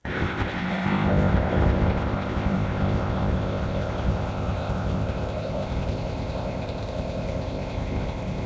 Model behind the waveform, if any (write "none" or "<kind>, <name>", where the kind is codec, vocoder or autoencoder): codec, ZipCodec